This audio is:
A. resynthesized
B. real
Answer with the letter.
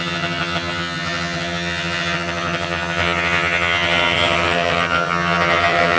A